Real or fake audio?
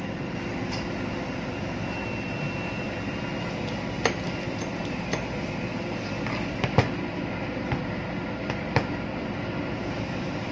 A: real